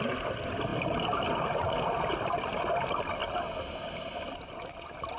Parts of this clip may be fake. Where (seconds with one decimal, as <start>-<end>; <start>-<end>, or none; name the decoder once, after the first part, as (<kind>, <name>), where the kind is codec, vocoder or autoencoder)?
none

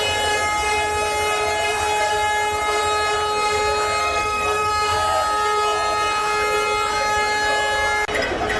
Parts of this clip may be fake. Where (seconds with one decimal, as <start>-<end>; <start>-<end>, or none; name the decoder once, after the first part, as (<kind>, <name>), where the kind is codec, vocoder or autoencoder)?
4.0-4.7 (codec, SNAC)

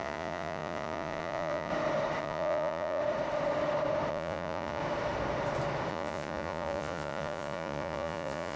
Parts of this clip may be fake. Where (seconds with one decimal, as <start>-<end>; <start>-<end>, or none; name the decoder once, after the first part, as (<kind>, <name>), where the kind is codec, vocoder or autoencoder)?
0.0-1.7 (vocoder, Vocos); 2.2-3.0; 4.1-4.8; 5.9-8.6